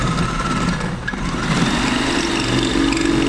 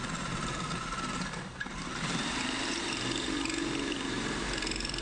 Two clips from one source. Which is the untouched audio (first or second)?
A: first